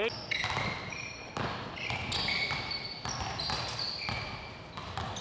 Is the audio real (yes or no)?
yes